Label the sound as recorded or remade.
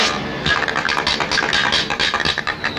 recorded